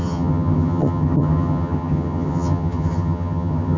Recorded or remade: remade